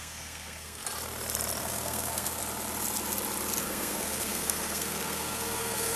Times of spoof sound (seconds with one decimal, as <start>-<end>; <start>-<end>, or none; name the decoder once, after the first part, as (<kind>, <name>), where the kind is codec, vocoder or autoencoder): 0.0-0.8 (codec, SNAC); 1.6-2.4; 3.6-6.0